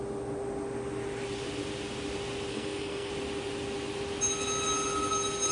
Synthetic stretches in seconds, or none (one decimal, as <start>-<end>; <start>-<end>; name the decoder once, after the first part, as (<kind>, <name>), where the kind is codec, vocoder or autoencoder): 2.5-3.1 (codec, SNAC)